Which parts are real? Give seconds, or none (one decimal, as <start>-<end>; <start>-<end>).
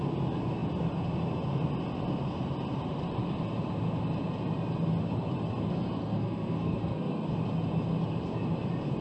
0.0-6.0; 7.3-9.0